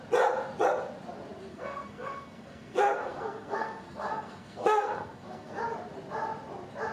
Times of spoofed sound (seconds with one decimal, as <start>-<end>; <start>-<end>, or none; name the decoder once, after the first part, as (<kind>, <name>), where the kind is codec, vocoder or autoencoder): 1.5-5.6 (codec, SNAC)

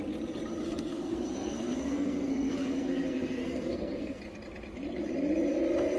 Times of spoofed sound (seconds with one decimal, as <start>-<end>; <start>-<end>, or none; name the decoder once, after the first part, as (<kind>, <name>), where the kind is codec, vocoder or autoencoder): 0.6-4.2 (codec, SNAC)